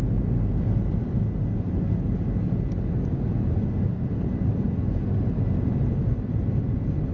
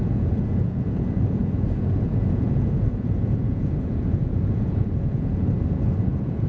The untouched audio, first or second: first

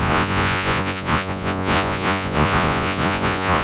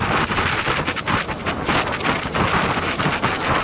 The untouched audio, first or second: second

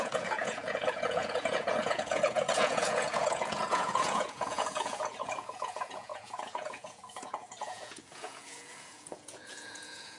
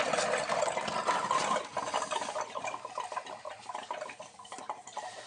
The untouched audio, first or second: second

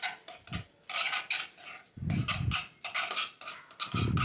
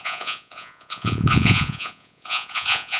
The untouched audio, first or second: first